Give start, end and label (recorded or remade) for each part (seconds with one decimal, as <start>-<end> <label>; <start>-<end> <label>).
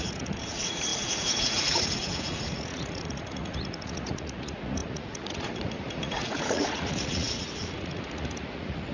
0.0-8.9 remade